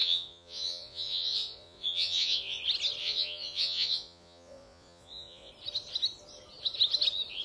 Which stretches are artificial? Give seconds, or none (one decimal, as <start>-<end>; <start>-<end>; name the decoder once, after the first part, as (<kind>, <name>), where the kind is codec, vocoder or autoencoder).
0.0-2.6 (vocoder, Vocos); 3.0-5.5